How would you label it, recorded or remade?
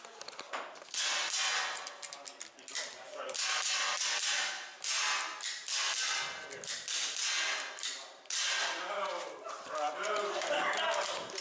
recorded